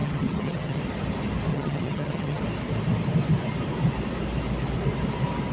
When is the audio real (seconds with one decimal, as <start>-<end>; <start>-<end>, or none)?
0.8-1.5; 2.4-5.5